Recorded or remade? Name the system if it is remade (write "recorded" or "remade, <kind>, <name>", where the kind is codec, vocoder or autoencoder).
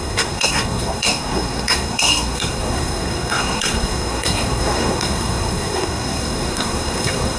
remade, codec, SNAC